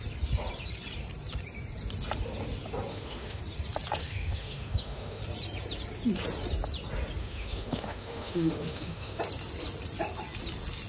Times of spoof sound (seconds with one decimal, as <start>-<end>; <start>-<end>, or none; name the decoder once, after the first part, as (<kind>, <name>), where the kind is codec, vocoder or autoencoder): 2.9-3.4 (autoencoder, DAC-VAE); 4.0-5.2; 7.2-9.2